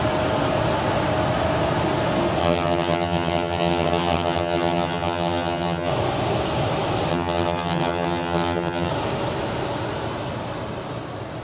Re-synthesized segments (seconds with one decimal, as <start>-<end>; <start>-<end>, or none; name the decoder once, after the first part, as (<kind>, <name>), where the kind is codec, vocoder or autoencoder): 2.4-5.9 (vocoder, HiFi-GAN); 7.1-8.9